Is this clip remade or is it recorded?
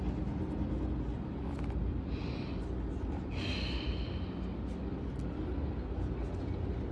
recorded